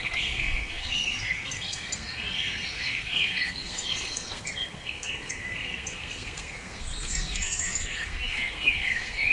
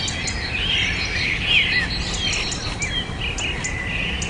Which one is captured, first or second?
second